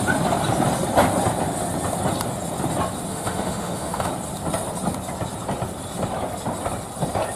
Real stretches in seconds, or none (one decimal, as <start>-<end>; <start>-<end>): 0.0-3.1; 4.1-7.4